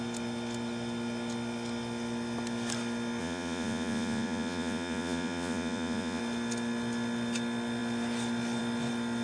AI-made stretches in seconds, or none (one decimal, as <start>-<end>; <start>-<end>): 3.2-6.2